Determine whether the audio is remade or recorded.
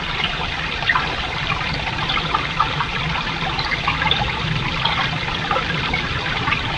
recorded